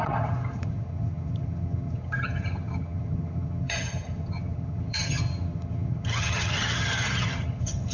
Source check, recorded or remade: remade